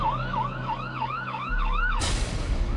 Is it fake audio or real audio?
fake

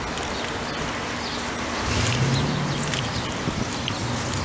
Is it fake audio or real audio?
real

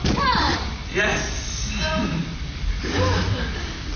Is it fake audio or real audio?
real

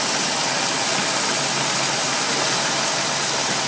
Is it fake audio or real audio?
real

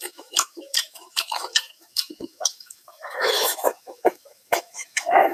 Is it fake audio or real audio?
fake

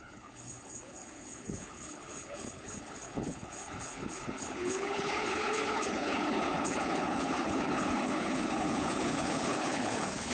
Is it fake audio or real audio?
fake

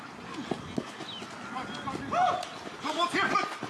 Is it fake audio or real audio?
real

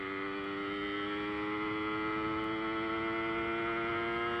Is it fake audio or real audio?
real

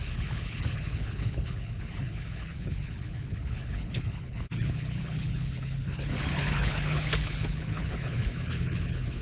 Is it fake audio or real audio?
fake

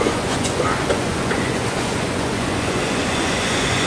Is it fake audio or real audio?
fake